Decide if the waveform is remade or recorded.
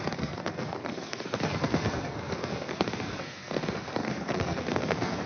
remade